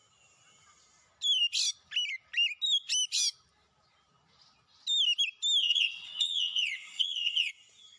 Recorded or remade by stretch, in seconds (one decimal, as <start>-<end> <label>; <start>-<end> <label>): 0.0-5.6 recorded; 5.6-7.5 remade; 7.5-8.0 recorded